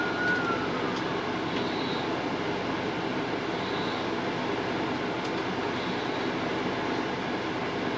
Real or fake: real